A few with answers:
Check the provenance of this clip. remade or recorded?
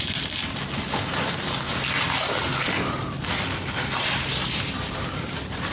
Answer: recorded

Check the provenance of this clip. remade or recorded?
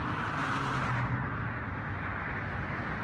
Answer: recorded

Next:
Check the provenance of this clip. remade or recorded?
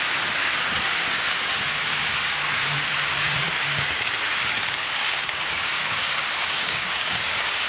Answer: remade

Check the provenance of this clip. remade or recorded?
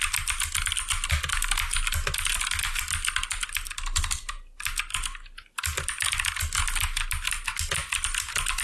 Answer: recorded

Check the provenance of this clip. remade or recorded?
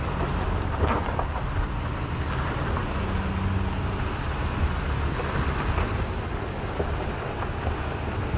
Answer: recorded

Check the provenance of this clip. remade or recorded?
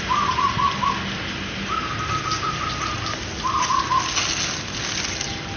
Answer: recorded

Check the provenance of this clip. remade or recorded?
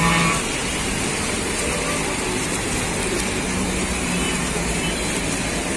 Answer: recorded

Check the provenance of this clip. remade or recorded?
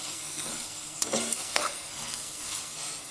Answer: remade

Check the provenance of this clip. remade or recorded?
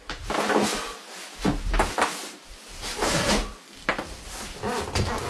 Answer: recorded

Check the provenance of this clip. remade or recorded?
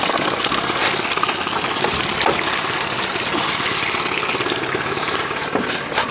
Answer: recorded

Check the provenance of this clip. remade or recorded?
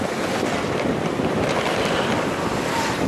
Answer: recorded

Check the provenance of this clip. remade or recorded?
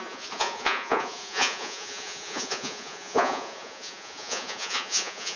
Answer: remade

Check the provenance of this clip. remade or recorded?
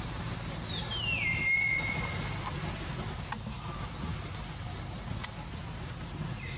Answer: recorded